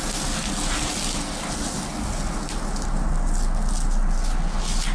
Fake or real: real